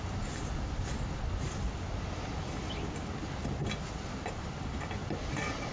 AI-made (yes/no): no